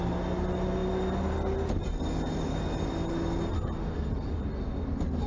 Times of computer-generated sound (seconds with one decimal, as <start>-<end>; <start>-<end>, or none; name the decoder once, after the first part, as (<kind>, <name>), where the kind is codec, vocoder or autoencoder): none